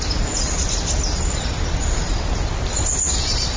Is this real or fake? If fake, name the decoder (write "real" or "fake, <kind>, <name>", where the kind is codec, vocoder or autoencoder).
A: real